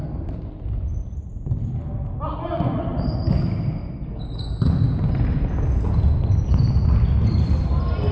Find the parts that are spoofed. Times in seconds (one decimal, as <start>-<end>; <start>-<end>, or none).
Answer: none